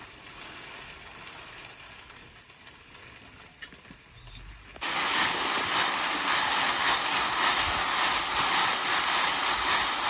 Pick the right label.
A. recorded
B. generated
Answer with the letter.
A